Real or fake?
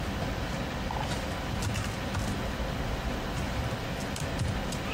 real